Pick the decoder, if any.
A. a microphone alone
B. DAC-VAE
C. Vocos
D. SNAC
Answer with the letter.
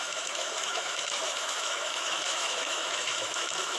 B